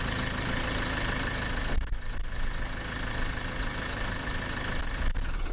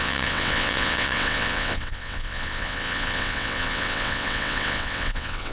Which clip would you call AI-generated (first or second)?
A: second